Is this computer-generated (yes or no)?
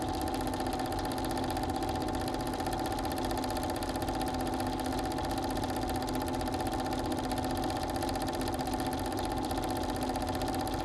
no